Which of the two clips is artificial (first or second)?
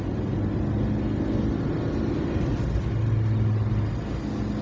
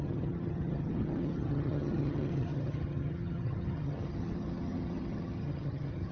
second